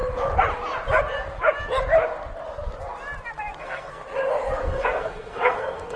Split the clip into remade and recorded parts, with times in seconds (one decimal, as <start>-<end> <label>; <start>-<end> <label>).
0.0-3.6 recorded; 3.6-4.0 remade; 4.0-4.6 recorded; 4.6-6.0 remade